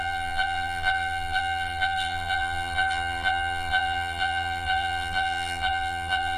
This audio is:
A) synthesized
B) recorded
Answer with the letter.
A